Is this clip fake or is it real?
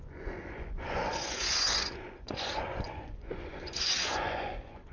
fake